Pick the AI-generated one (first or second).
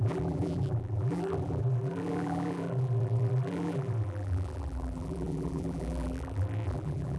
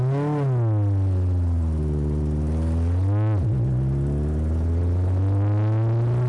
first